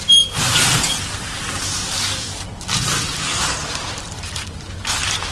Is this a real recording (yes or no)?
yes